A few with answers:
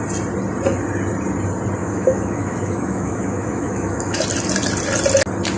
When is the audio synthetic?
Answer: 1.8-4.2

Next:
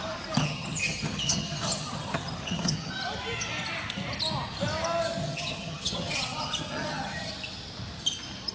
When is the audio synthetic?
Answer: 0.4-2.9; 5.2-7.3

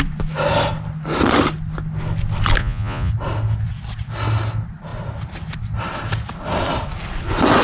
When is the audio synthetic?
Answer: 2.6-3.1

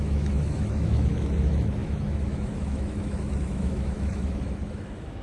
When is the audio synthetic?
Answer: 0.0-5.2